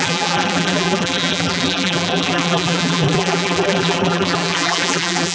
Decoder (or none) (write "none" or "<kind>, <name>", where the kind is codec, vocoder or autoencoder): vocoder, BigVGAN v2